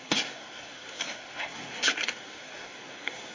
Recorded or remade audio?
remade